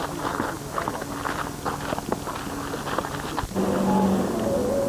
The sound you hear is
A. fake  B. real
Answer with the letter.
B